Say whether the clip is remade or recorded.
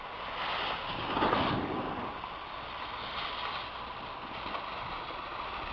recorded